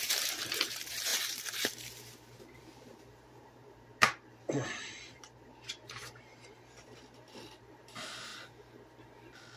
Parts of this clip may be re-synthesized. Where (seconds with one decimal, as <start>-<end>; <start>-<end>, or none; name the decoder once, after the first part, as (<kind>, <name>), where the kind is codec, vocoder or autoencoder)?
0.0-8.3 (vocoder, BigVGAN v2)